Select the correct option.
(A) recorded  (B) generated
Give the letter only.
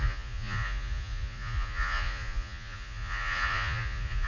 B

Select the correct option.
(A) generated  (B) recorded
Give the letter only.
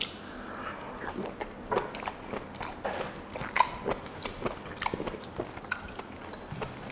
B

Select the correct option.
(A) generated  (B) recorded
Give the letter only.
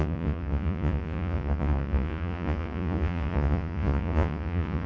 A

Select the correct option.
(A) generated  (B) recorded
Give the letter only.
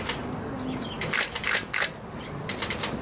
B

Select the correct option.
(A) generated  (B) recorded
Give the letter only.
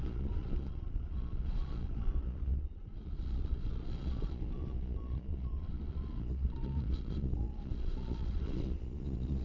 A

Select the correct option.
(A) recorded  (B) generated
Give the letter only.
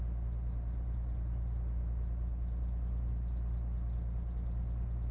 A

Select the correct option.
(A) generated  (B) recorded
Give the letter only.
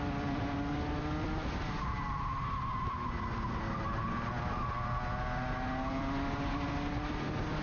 B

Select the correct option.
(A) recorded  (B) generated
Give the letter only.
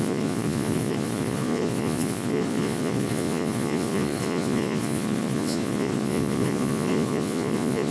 B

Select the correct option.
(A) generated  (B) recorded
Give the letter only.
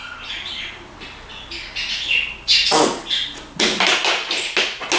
B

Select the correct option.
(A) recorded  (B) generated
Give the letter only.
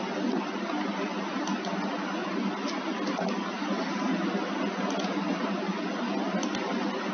A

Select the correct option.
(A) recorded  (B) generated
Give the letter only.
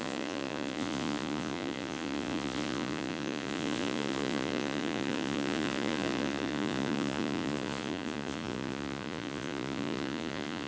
B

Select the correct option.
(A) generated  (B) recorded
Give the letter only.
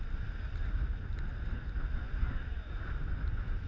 B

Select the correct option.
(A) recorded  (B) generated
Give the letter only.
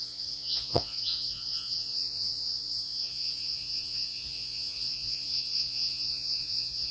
B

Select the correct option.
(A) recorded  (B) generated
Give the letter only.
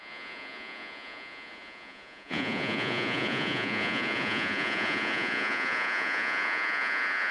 B